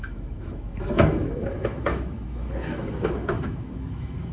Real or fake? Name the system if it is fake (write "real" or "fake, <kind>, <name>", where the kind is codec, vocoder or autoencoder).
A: fake, autoencoder, DAC-VAE